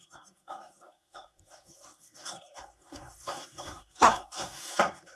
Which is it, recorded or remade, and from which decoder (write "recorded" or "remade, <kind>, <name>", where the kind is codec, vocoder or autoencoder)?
remade, codec, SNAC